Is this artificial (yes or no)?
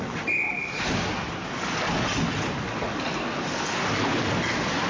no